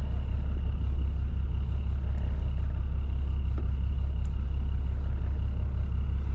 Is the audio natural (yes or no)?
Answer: yes